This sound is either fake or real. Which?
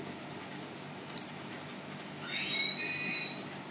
real